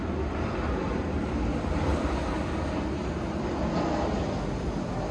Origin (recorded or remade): recorded